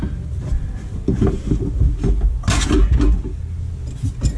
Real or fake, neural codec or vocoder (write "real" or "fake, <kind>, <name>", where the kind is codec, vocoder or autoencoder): real